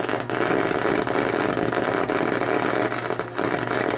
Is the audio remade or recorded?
recorded